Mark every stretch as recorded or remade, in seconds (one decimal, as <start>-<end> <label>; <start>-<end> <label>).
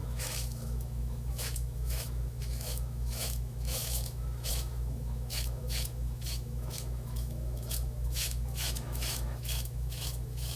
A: 0.0-10.6 remade